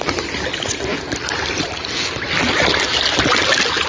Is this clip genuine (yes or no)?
yes